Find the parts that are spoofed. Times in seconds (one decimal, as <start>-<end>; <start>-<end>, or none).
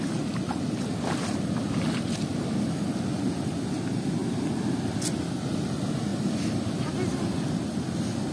6.1-6.9